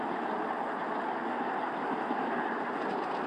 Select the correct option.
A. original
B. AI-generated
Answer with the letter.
A